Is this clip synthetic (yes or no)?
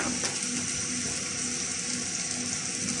no